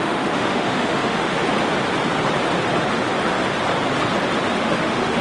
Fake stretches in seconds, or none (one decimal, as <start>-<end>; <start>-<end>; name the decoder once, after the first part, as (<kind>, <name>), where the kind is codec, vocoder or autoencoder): 0.0-1.4 (autoencoder, DAC-VAE); 4.5-5.2